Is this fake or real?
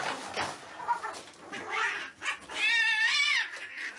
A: real